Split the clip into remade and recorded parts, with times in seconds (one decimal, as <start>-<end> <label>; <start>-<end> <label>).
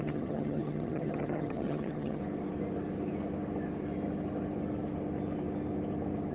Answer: 0.0-2.2 remade; 2.2-6.3 recorded